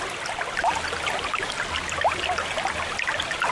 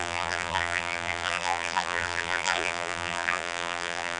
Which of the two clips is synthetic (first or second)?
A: second